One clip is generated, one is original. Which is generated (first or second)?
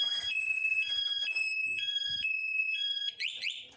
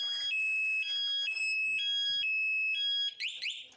first